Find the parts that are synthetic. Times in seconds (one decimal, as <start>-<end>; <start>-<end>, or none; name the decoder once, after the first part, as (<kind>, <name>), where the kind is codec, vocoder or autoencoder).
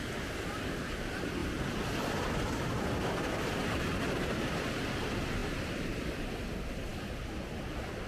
none